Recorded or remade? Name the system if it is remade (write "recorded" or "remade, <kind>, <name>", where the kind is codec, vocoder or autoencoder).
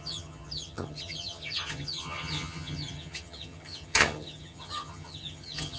remade, vocoder, HiFi-GAN